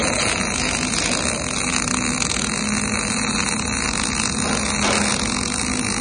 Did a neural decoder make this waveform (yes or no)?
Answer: no